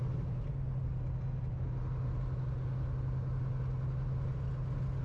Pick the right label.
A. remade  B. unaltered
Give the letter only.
B